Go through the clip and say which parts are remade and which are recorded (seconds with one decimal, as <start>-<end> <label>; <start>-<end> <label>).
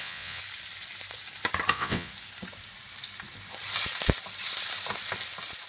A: 0.0-0.4 remade; 0.4-1.7 recorded; 1.7-2.1 remade; 2.1-5.7 recorded